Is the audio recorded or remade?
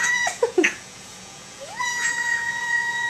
remade